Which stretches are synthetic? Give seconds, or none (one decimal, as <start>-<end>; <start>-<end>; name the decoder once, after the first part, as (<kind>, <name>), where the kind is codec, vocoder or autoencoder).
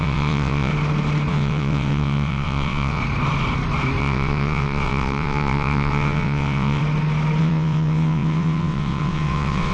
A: 0.0-0.7 (vocoder, WaveNeXt); 1.3-3.0; 4.0-6.8; 7.4-9.7